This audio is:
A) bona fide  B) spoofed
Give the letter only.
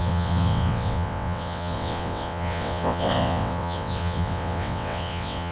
B